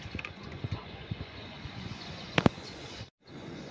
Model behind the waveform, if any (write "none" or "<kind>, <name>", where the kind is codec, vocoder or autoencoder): vocoder, Vocos